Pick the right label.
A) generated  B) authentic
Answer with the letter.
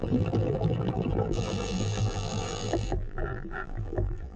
A